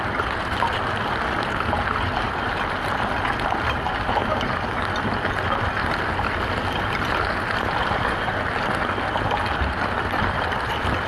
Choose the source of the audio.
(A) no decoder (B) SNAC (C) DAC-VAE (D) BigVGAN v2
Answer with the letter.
A